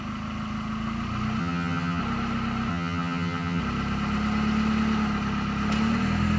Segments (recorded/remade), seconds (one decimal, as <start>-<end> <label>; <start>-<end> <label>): 0.0-1.4 recorded; 1.4-2.0 remade; 2.0-2.7 recorded; 2.7-3.6 remade; 3.6-6.4 recorded